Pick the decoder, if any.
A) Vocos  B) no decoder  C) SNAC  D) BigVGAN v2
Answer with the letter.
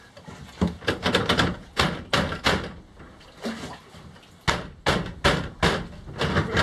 B